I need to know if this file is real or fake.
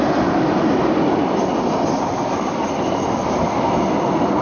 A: real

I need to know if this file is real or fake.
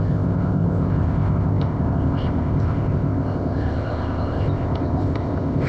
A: fake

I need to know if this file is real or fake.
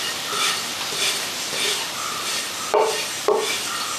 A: real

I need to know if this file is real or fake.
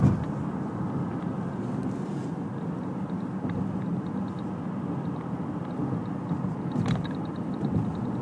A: real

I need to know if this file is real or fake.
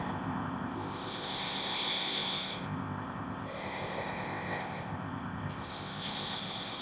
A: fake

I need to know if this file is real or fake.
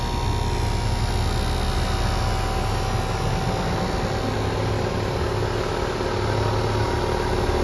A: real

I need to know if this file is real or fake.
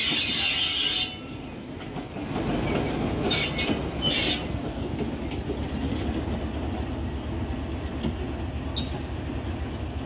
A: real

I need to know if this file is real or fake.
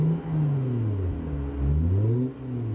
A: real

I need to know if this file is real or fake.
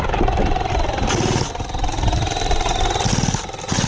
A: real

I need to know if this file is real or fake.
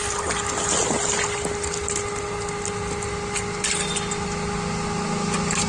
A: real